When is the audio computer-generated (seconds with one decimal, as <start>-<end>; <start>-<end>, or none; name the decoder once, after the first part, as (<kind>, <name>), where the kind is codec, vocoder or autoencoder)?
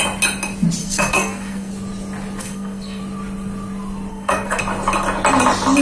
0.8-1.7 (codec, SNAC); 2.4-3.0; 4.1-4.6